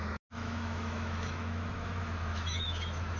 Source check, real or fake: fake